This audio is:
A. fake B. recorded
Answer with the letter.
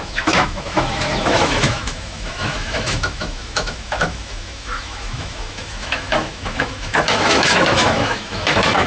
A